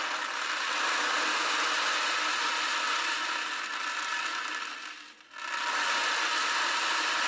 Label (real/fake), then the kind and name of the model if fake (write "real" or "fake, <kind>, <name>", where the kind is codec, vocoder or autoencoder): real